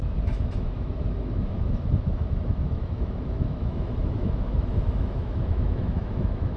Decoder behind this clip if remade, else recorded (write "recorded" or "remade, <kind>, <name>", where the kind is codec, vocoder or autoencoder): remade, autoencoder, DAC-VAE